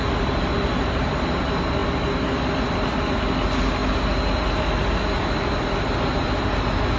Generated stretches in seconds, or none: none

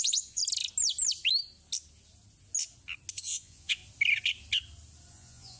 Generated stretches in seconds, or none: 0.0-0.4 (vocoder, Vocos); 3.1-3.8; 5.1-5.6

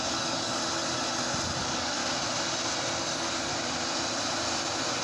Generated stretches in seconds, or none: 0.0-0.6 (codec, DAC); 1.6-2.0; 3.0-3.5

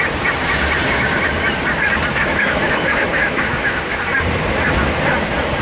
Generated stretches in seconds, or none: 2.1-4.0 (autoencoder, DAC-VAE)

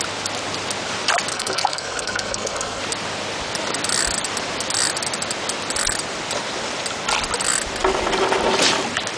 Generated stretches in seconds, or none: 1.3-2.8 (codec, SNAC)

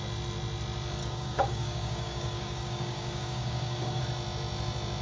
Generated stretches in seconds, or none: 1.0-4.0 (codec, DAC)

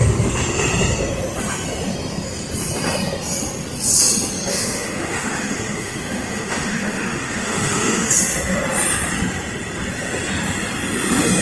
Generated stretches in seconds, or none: 4.5-8.1 (autoencoder, DAC-VAE)

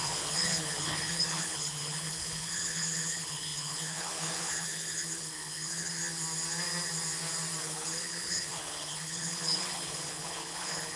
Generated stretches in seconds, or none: 0.0-6.0 (codec, HILCodec); 7.6-11.0